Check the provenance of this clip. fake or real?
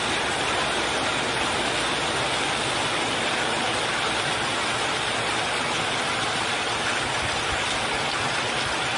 real